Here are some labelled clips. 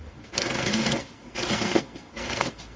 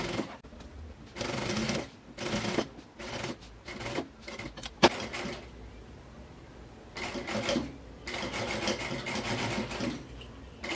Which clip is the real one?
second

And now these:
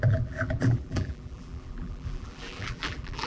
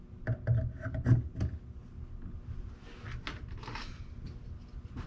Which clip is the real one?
second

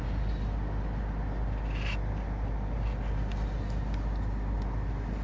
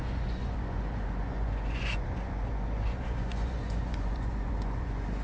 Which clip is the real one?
first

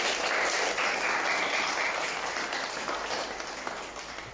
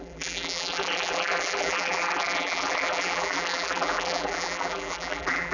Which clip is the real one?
first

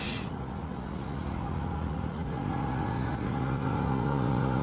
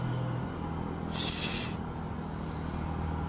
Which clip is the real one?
second